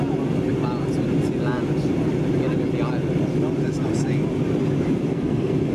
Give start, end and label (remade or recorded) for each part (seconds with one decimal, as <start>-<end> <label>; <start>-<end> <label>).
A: 0.0-5.1 recorded; 5.1-5.7 remade